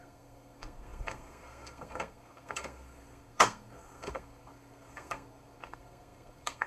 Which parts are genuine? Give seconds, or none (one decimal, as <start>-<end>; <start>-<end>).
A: none